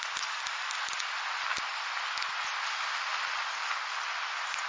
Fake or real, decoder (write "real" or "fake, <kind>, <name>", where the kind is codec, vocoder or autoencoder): real